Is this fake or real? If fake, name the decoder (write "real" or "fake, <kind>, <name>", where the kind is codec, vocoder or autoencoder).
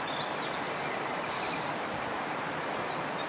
fake, vocoder, BigVGAN v2